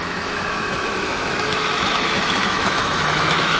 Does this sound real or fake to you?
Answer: fake